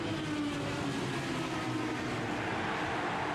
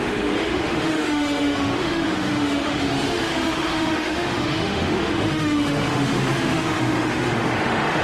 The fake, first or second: second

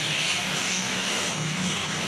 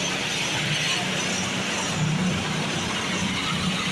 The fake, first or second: first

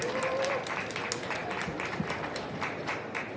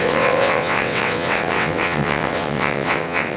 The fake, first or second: second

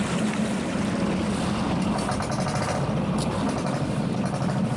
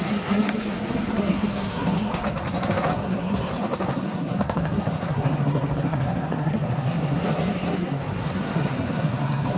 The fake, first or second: second